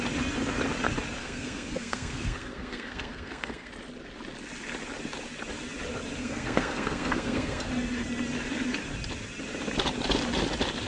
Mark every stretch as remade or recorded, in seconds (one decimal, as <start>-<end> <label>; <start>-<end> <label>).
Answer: 0.0-1.2 recorded; 1.2-3.7 remade; 3.7-6.2 recorded; 6.2-7.7 remade; 7.7-10.9 recorded